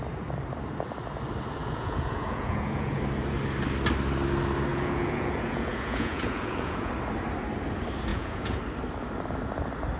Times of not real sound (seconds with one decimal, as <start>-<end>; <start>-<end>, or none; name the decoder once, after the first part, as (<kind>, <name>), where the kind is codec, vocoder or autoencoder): 1.6-3.0 (vocoder, Vocos); 4.7-6.9; 8.1-8.6